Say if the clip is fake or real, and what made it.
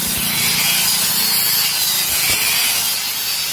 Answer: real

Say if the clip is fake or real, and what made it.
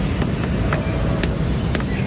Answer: real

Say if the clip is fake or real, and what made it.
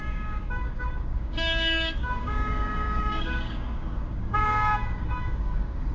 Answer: fake, codec, DAC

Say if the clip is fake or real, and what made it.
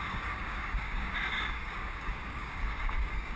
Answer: fake, codec, DAC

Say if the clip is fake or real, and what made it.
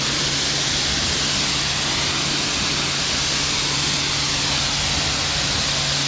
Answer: real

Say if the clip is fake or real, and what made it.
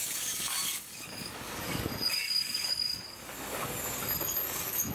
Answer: fake, codec, DAC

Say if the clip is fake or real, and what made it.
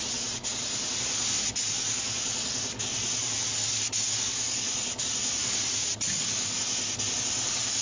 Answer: real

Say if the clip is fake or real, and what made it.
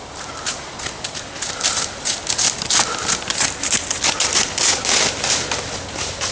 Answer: real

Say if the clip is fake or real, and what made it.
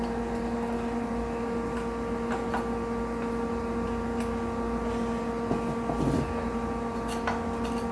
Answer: real